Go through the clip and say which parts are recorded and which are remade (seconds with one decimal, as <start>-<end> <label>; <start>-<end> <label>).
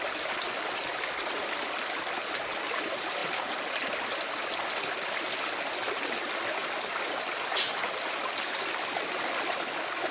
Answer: 0.0-10.1 recorded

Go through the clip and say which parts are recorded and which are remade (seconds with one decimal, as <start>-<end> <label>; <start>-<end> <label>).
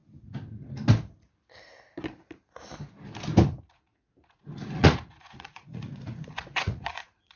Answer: 0.0-3.6 recorded; 3.6-7.4 remade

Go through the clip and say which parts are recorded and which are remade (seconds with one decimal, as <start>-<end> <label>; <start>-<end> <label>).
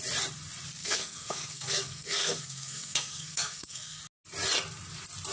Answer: 0.0-0.8 recorded; 0.8-4.0 remade; 4.0-5.3 recorded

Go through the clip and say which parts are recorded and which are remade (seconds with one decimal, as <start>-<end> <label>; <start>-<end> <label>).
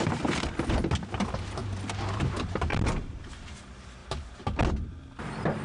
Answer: 0.0-1.6 recorded; 1.6-2.2 remade; 2.2-2.7 recorded; 2.7-3.5 remade; 3.5-5.6 recorded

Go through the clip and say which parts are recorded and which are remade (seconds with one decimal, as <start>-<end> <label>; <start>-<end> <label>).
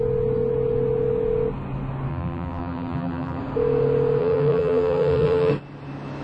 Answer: 0.0-2.1 recorded; 2.1-3.4 remade; 3.4-4.2 recorded; 4.2-5.5 remade; 5.5-6.2 recorded